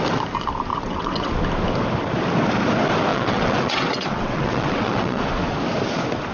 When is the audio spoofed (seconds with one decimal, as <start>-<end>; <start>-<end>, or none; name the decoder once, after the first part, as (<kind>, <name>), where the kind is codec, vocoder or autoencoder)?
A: 0.7-1.3 (vocoder, WaveNeXt); 3.1-5.2